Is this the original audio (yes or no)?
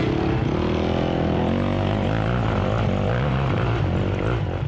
yes